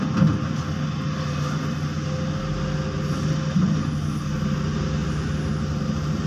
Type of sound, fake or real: real